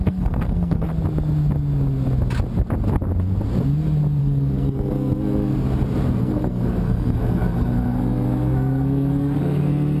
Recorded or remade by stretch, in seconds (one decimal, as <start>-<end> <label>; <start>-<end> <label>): 0.0-0.9 remade; 0.9-4.2 recorded; 4.2-5.5 remade; 5.5-6.2 recorded; 6.2-10.0 remade